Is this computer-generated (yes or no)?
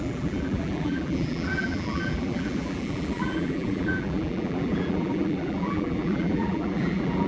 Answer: yes